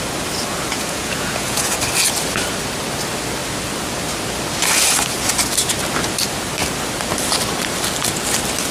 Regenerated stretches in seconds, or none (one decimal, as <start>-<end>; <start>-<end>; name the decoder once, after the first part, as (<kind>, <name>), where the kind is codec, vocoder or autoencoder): 0.7-1.8 (vocoder, Vocos)